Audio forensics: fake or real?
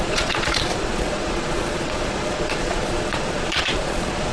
fake